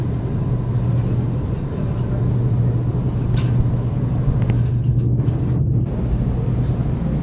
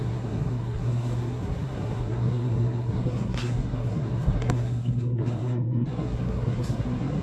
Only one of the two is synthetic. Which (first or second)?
second